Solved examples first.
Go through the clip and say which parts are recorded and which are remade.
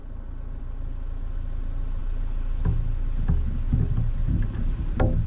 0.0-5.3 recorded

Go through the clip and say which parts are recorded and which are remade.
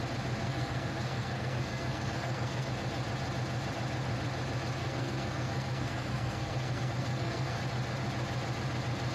0.0-0.4 recorded; 0.4-2.7 remade; 2.7-4.8 recorded; 4.8-7.6 remade; 7.6-9.1 recorded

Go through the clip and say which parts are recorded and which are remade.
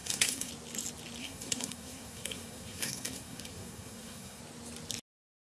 0.0-0.5 remade; 0.5-1.2 recorded; 1.2-4.4 remade; 4.4-5.4 recorded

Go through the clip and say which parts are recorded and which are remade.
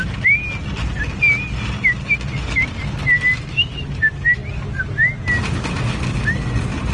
0.0-6.9 recorded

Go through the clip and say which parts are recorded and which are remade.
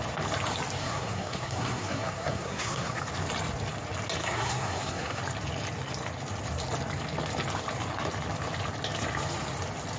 0.0-0.8 recorded; 0.8-3.0 remade; 3.0-4.2 recorded; 4.2-5.2 remade; 5.2-10.0 recorded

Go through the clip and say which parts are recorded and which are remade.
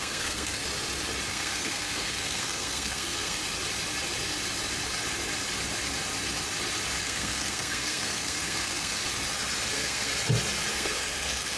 0.0-0.6 remade; 0.6-1.3 recorded; 1.3-3.4 remade; 3.4-7.0 recorded; 7.0-9.0 remade; 9.0-9.7 recorded; 9.7-10.1 remade; 10.1-10.7 recorded; 10.7-11.6 remade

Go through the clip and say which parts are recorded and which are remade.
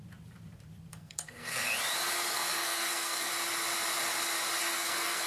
0.0-0.9 recorded; 0.9-1.7 remade; 1.7-2.3 recorded; 2.3-3.3 remade; 3.3-4.6 recorded; 4.6-5.3 remade